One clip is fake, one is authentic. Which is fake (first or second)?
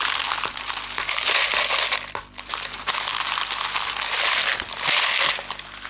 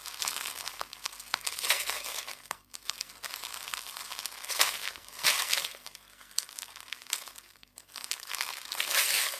second